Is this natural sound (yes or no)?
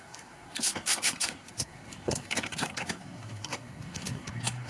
no